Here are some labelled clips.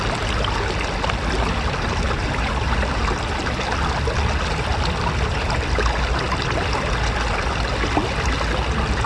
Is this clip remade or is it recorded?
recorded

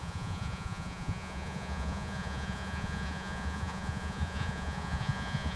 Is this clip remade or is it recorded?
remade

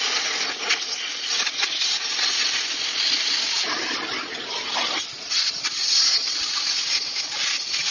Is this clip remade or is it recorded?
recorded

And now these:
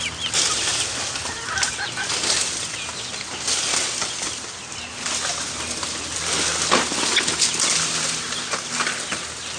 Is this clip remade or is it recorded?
recorded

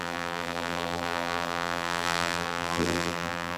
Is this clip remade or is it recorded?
remade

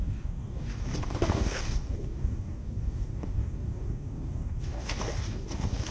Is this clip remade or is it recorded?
remade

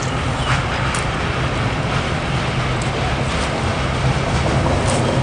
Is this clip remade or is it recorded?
recorded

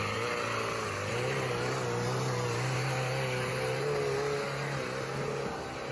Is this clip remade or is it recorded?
recorded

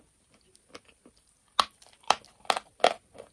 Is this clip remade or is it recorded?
recorded